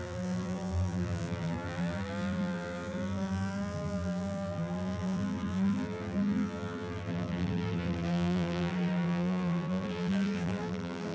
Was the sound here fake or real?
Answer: fake